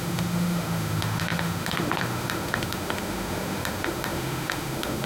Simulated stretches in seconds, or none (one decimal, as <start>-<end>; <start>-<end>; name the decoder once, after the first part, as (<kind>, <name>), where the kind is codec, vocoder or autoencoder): 0.0-5.1 (autoencoder, DAC-VAE)

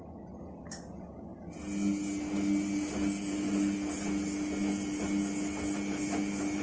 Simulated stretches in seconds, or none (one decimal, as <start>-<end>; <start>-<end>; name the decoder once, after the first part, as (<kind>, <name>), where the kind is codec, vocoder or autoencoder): none